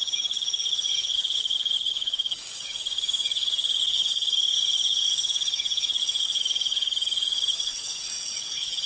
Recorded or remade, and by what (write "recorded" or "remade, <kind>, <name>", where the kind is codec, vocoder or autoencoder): remade, codec, DAC